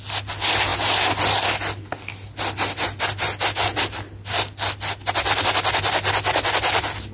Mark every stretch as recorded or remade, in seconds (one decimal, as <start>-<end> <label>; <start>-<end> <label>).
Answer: 0.0-7.1 recorded